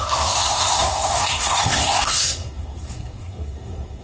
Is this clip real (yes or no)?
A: no